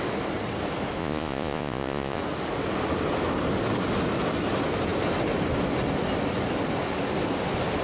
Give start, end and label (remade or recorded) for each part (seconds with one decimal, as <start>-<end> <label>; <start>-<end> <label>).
0.0-1.0 recorded; 1.0-2.2 remade; 2.2-7.8 recorded